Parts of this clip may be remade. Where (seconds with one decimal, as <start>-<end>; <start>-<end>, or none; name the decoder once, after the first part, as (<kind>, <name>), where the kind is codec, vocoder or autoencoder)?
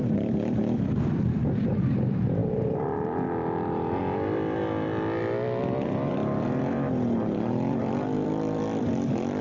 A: 0.0-4.6 (vocoder, BigVGAN v2); 5.2-6.2; 7.7-9.4